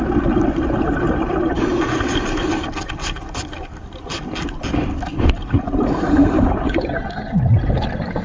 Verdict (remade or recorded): recorded